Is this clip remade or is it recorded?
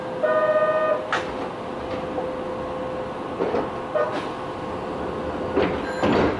recorded